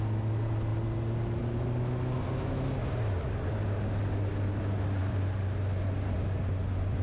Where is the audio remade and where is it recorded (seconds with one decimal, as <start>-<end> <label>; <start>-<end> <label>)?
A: 0.0-7.0 recorded